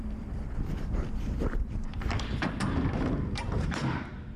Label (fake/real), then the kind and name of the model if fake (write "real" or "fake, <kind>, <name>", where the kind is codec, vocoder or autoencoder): fake, vocoder, BigVGAN v2